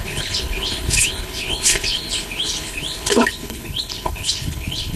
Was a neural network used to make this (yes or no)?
yes